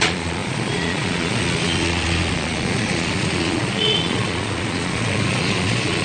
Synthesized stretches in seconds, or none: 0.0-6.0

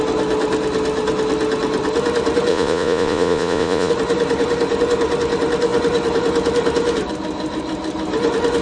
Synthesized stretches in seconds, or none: 2.5-3.9

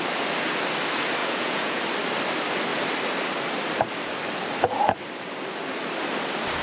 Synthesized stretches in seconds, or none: 1.2-1.8

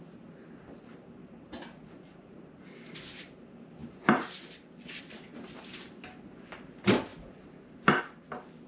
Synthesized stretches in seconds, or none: none

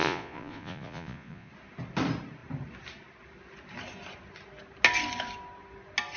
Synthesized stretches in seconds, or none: 0.0-1.5

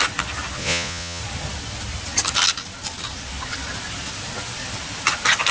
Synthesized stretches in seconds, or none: 0.6-1.2

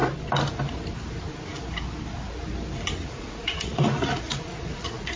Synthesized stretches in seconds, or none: 3.1-5.2

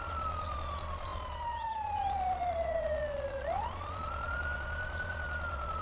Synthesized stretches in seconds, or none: 0.0-5.8